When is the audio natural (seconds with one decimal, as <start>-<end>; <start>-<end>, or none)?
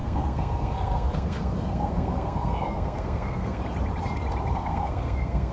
3.6-4.5